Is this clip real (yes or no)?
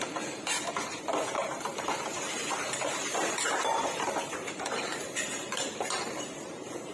no